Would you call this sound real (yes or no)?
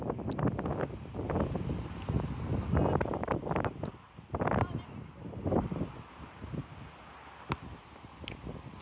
yes